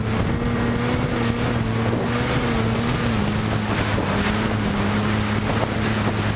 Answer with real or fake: real